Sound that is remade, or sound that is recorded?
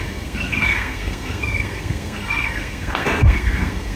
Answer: remade